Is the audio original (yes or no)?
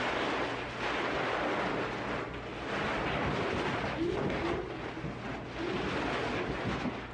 yes